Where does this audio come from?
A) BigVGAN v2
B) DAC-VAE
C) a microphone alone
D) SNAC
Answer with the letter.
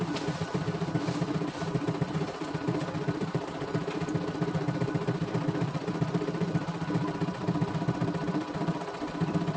A